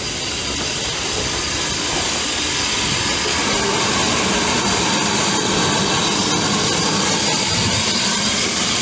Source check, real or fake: real